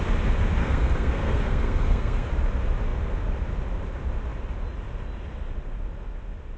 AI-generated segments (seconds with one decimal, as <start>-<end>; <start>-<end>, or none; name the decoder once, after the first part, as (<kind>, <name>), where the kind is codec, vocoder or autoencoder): 0.6-2.3 (codec, SNAC)